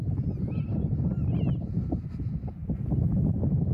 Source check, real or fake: real